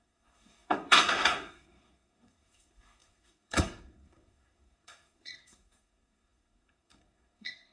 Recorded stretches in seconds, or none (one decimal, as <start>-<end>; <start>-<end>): none